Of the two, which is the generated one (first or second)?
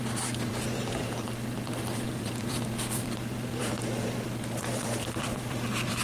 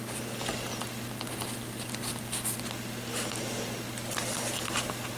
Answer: first